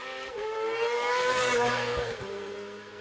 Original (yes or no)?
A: no